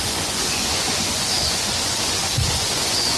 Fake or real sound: fake